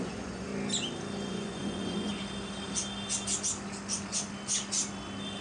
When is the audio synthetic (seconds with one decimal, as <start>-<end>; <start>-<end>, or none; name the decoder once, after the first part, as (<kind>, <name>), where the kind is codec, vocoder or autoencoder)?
0.0-0.5 (vocoder, Vocos); 1.3-2.1